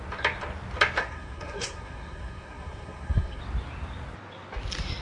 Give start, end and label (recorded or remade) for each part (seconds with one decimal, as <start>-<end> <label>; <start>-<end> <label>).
0.0-1.0 recorded; 1.0-3.4 remade; 3.4-5.0 recorded